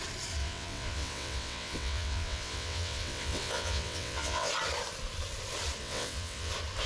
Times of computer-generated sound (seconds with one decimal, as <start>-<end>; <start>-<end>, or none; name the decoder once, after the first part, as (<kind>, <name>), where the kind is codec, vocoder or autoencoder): 0.4-4.5 (vocoder, WaveNeXt); 5.8-6.5